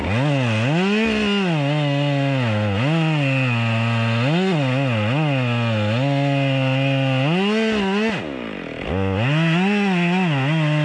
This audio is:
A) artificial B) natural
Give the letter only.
B